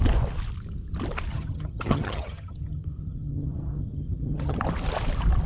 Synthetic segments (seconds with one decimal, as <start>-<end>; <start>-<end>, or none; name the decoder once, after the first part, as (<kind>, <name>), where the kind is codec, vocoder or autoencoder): 1.3-4.6 (vocoder, HiFi-GAN)

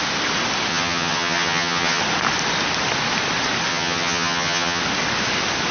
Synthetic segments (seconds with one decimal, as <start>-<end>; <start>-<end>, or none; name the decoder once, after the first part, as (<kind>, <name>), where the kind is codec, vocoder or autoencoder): 0.7-2.0 (vocoder, HiFi-GAN); 3.7-4.8

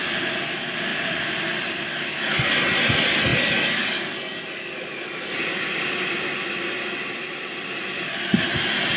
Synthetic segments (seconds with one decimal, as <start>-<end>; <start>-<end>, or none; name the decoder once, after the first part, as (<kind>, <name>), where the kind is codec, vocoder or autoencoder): none

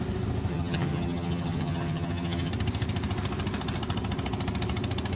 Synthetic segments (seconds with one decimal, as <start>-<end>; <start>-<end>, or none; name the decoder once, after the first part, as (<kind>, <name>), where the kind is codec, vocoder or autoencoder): 0.5-2.5 (vocoder, HiFi-GAN)

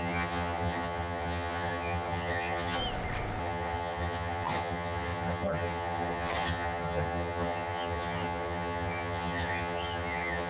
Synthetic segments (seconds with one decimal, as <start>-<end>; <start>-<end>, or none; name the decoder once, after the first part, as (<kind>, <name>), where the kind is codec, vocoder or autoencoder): 0.0-2.8 (vocoder, HiFi-GAN); 3.4-10.5